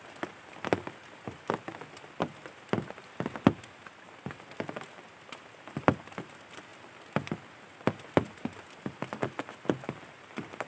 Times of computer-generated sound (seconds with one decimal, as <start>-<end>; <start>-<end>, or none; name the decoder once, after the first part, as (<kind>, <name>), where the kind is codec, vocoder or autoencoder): none